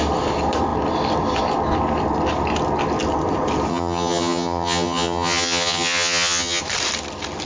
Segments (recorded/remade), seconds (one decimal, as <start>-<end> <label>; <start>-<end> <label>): 0.0-3.7 recorded; 3.7-6.6 remade; 6.6-7.5 recorded